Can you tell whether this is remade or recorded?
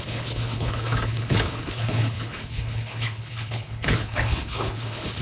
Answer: remade